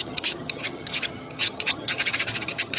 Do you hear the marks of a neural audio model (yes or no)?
yes